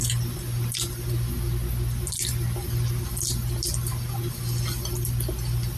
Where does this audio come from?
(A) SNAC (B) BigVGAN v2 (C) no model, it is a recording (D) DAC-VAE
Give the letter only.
C